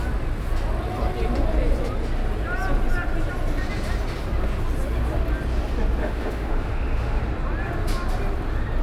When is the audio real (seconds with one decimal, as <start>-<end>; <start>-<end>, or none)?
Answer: 0.0-6.0; 7.2-8.8